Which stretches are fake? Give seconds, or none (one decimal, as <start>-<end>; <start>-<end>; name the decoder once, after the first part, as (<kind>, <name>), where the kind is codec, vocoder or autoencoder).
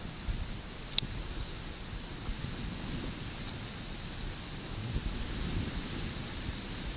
none